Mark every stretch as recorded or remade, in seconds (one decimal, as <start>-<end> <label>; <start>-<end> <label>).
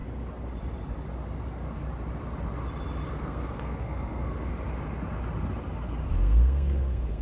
0.0-3.1 recorded; 3.1-4.5 remade; 4.5-6.1 recorded; 6.1-7.2 remade